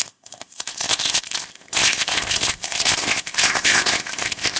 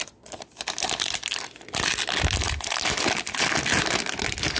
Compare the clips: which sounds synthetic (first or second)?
first